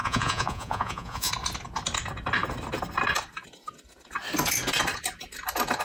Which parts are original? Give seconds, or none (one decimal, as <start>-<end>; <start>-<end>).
1.3-5.8